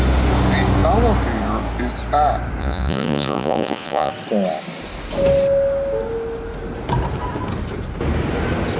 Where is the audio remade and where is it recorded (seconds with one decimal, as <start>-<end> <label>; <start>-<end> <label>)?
0.0-2.6 recorded; 2.6-4.1 remade; 4.1-8.8 recorded